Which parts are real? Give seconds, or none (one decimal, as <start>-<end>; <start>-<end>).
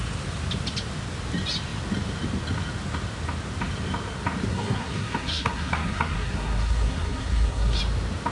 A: 0.0-4.5; 7.8-8.3